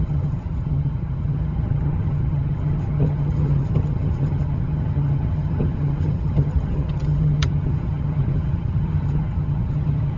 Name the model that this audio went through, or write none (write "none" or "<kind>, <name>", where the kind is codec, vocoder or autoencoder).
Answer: vocoder, HiFi-GAN